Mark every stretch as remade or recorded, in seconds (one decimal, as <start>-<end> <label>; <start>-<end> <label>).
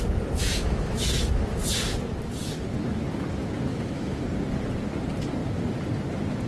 0.0-0.4 recorded; 0.4-1.3 remade; 1.3-3.7 recorded; 3.7-4.2 remade; 4.2-6.5 recorded